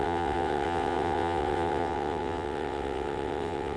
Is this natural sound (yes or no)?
no